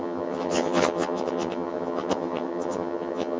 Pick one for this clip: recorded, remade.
remade